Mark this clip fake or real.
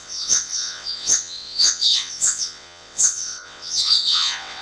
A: fake